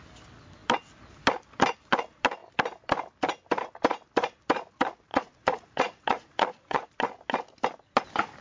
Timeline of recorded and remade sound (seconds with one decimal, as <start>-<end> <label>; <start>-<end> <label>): 0.0-5.1 recorded; 5.1-6.9 remade; 6.9-8.4 recorded

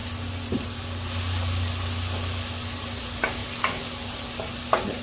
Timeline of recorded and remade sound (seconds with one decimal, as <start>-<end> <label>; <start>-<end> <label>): 0.0-5.0 recorded

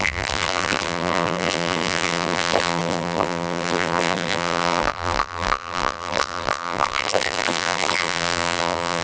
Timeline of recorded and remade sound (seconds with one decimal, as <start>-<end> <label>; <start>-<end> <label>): 0.0-9.0 remade